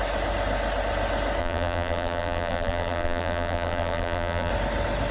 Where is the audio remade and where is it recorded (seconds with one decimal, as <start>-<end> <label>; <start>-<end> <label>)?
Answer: 0.0-1.4 recorded; 1.4-4.5 remade; 4.5-5.1 recorded